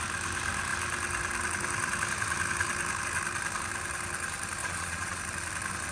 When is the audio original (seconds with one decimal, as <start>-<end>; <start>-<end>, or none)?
0.0-4.6; 5.2-5.9